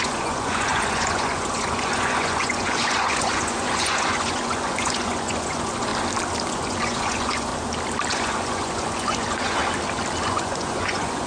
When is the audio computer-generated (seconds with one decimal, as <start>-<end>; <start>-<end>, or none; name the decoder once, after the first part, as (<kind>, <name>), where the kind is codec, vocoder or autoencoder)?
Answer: 0.0-5.9 (vocoder, Vocos); 6.5-7.5; 8.1-9.6; 10.2-11.3